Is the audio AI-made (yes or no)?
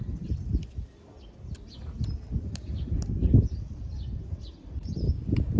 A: no